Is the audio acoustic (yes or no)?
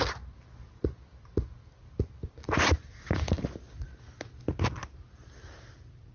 yes